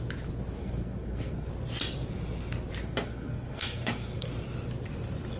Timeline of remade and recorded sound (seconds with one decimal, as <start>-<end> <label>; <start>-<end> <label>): 0.0-0.6 recorded; 0.6-1.5 remade; 1.5-2.8 recorded; 2.8-4.3 remade; 4.3-5.4 recorded